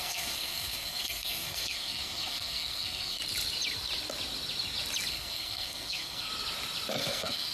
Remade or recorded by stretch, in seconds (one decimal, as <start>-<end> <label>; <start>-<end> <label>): 0.0-3.2 remade; 3.2-5.1 recorded; 5.1-6.3 remade; 6.3-7.0 recorded; 7.0-7.5 remade